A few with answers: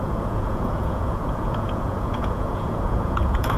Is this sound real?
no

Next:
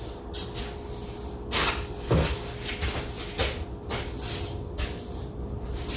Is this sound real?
yes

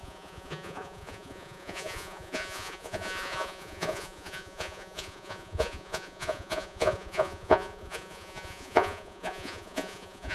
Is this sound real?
no